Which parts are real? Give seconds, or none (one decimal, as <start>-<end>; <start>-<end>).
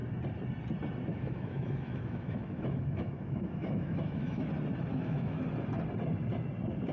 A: 0.0-1.1; 4.5-4.9; 5.4-6.9